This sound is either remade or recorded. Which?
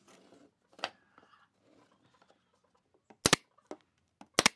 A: recorded